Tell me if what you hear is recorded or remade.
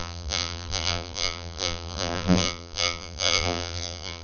remade